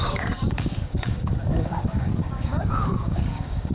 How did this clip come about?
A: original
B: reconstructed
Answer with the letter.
B